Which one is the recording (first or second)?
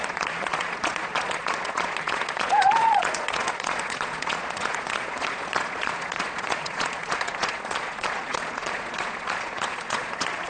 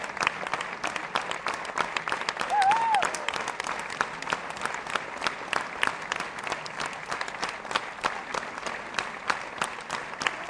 second